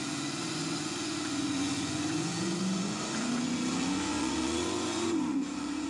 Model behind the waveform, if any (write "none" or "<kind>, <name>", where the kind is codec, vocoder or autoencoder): vocoder, Vocos